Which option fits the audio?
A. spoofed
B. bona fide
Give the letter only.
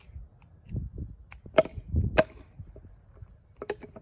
B